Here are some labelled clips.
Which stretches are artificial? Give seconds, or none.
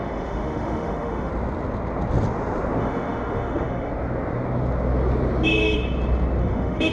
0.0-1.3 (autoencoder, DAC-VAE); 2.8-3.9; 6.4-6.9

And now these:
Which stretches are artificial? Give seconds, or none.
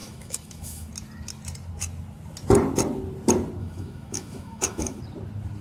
0.0-0.9 (autoencoder, DAC-VAE); 3.6-5.0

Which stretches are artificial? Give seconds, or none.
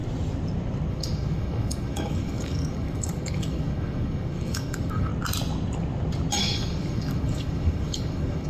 0.9-5.1 (codec, DAC); 6.4-8.5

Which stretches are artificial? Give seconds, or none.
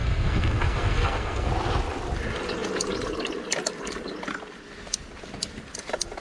0.0-1.5 (codec, SNAC)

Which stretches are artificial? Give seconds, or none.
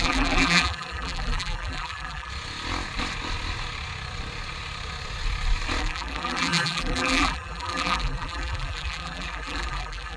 0.0-2.3 (vocoder, BigVGAN v2); 5.8-10.2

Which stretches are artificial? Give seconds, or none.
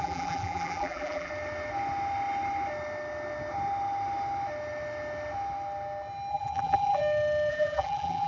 0.0-1.3 (vocoder, BigVGAN v2); 6.3-7.0; 7.5-8.3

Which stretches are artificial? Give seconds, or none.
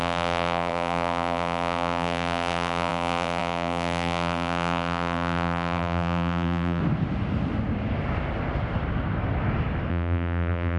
0.0-6.8 (vocoder, BigVGAN v2); 9.9-10.8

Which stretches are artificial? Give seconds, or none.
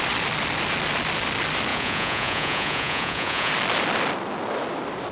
1.7-3.5 (vocoder, Vocos)